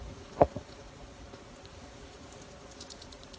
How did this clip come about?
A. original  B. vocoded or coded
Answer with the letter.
B